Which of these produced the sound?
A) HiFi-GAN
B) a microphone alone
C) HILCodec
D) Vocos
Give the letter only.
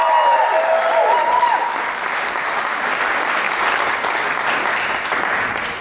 B